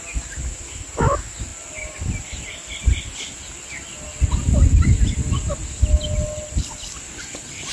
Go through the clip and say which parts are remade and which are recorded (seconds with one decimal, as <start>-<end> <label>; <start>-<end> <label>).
0.0-7.7 recorded